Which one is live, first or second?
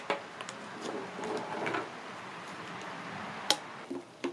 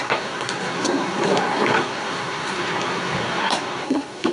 first